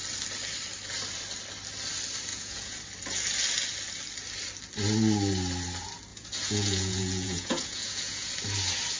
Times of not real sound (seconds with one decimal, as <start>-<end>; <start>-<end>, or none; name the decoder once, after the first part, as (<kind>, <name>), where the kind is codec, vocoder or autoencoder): 2.3-2.8 (vocoder, Vocos); 6.1-8.3